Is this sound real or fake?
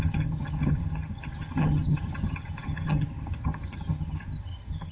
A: fake